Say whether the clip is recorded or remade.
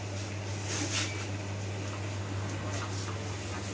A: recorded